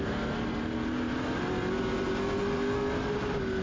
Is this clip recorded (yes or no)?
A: yes